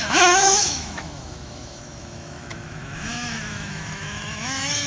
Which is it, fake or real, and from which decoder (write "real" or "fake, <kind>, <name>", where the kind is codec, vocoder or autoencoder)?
fake, autoencoder, DAC-VAE